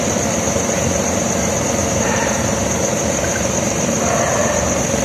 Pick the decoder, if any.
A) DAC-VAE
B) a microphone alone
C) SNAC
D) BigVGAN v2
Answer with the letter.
D